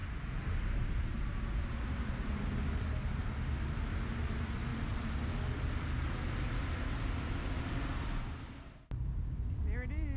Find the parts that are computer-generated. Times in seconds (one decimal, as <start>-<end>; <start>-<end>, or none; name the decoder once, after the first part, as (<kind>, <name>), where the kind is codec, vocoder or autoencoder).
none